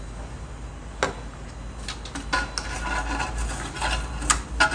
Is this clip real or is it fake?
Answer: real